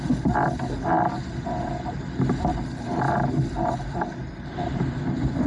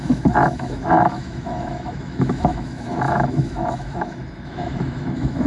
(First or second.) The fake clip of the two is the second